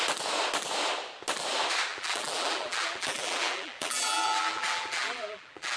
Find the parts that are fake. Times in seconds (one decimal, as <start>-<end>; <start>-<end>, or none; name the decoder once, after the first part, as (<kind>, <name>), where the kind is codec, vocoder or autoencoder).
1.9-5.8 (vocoder, BigVGAN v2)